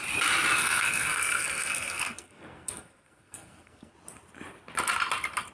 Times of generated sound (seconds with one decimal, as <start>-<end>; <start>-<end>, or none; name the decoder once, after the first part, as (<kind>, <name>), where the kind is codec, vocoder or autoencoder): 0.6-3.9 (codec, SNAC)